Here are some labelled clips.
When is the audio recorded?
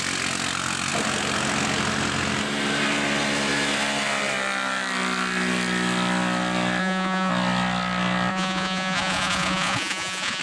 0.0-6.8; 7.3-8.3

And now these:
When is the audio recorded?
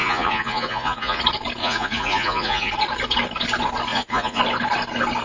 1.2-1.6; 2.7-3.9; 4.4-5.2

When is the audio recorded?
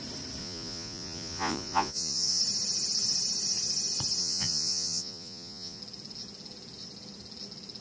0.0-0.4; 2.4-4.2; 5.8-7.8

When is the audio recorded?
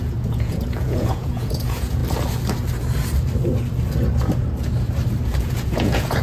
2.0-5.4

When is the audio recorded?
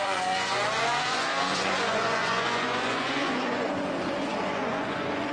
none